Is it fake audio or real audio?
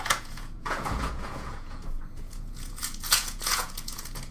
fake